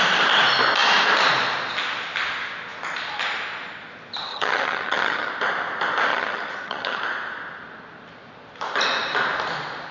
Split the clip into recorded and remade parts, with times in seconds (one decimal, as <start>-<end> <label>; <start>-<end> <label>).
0.0-4.3 recorded; 4.3-5.3 remade; 5.3-6.1 recorded; 6.1-7.0 remade; 7.0-9.9 recorded